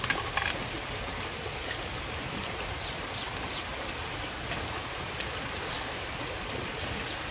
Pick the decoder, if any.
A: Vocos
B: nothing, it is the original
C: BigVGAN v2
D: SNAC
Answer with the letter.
B